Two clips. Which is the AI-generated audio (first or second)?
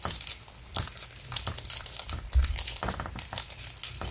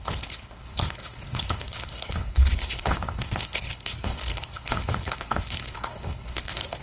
second